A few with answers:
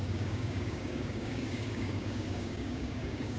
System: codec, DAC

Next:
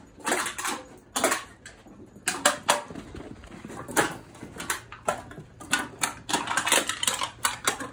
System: none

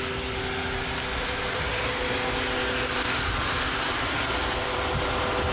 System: none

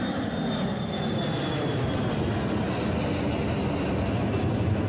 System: none